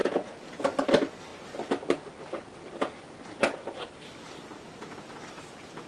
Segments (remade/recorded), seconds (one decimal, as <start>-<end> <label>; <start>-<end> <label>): 0.0-0.6 remade; 0.6-5.9 recorded